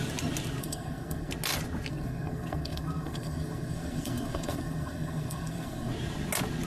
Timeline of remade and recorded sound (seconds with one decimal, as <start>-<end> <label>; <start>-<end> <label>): 0.0-0.6 recorded; 0.6-1.3 remade; 1.3-1.9 recorded; 1.9-5.9 remade; 5.9-6.7 recorded